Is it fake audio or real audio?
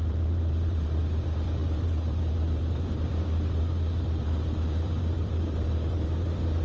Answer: fake